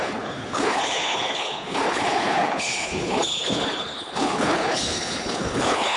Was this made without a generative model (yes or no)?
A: no